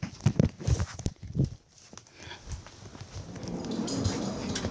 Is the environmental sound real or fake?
real